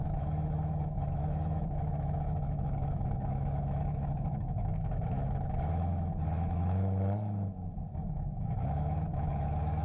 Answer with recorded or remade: remade